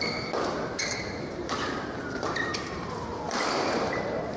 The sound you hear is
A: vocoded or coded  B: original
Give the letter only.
A